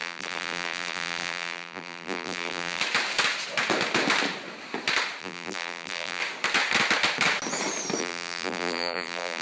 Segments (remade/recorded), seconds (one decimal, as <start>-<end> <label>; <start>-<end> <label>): 0.0-2.8 remade; 2.8-5.2 recorded; 5.2-6.2 remade; 6.2-8.0 recorded; 8.0-9.4 remade